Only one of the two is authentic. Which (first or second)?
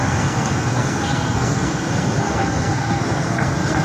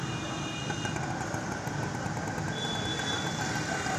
second